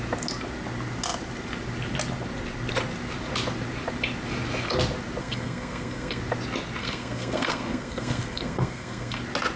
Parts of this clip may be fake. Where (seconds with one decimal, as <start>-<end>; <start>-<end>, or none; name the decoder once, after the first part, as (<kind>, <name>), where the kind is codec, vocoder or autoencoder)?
5.2-6.2 (codec, SNAC); 6.8-9.2